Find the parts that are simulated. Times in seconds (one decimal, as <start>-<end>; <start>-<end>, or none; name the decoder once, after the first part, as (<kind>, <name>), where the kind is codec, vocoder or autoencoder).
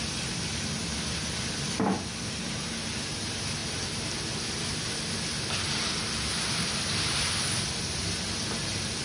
none